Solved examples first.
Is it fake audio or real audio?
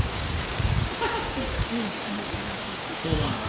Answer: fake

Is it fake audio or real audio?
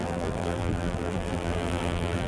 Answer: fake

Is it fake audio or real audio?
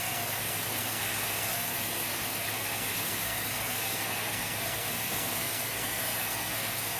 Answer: fake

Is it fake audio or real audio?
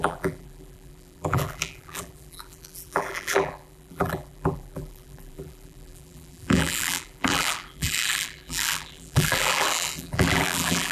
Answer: fake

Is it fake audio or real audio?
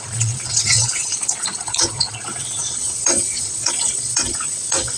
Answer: fake